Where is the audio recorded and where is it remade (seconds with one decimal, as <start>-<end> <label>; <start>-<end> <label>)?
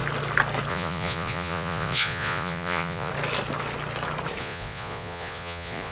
0.0-0.7 recorded; 0.7-3.1 remade; 3.1-4.4 recorded; 4.4-5.9 remade